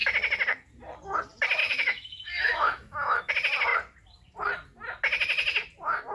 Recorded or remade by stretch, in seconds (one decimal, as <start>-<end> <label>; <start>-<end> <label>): 0.0-1.6 recorded; 1.6-3.3 remade; 3.3-6.1 recorded